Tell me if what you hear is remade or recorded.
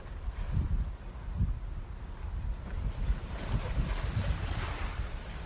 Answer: recorded